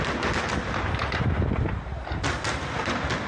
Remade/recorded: recorded